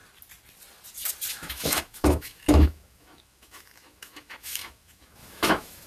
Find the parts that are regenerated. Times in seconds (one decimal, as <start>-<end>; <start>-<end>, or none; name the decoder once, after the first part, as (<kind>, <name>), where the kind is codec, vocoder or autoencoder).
1.3-5.9 (autoencoder, DAC-VAE)